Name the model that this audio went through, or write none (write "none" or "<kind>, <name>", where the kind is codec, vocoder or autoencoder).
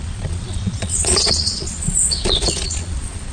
vocoder, Vocos